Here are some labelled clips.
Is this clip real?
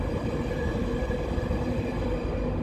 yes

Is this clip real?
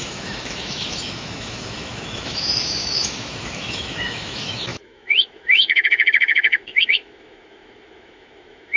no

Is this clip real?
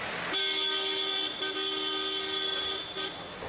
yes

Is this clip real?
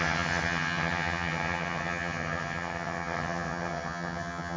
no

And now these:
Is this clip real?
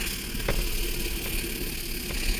yes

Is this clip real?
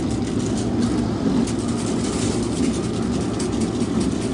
yes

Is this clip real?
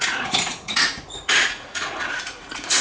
no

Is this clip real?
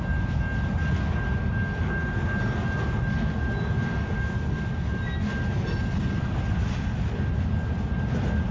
yes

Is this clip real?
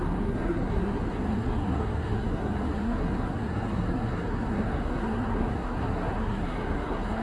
no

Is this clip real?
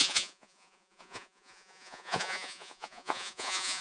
no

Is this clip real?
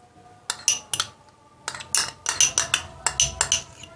yes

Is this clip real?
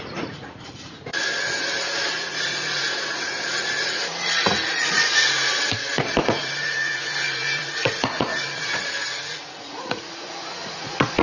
no